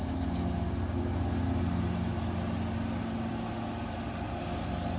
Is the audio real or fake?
real